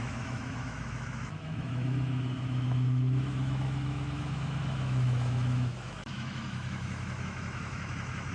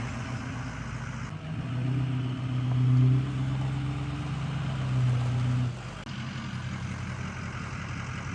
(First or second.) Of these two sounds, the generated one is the first